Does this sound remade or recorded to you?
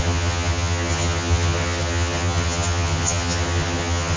remade